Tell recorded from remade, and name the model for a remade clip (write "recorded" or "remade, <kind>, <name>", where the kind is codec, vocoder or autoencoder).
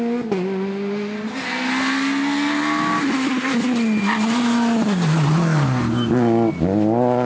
recorded